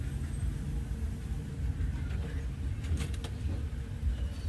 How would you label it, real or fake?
real